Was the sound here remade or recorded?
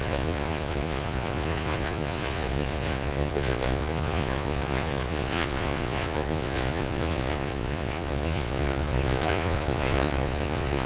remade